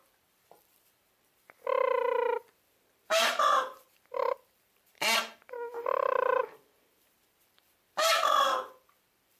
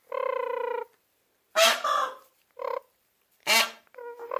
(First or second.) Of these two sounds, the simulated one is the first